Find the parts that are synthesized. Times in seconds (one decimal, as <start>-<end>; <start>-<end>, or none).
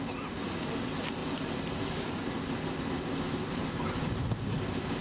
none